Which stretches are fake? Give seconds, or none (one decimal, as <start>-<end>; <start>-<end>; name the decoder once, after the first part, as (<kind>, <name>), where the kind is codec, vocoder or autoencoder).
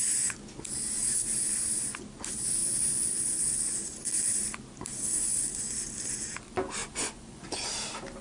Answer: 6.8-7.7 (vocoder, Vocos)